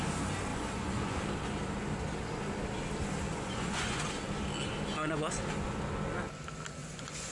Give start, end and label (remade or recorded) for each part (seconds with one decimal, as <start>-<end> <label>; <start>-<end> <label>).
0.0-0.5 recorded; 0.5-1.2 remade; 1.2-3.3 recorded; 3.3-4.0 remade; 4.0-6.8 recorded; 6.8-7.3 remade